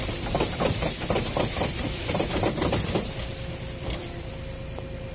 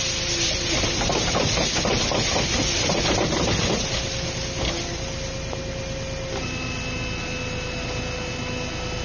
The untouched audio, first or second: second